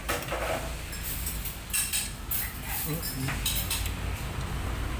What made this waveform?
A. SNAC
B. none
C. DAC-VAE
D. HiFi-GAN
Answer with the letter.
B